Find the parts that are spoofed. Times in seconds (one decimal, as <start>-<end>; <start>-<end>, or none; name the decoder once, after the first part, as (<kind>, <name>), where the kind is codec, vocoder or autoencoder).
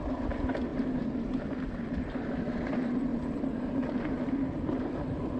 none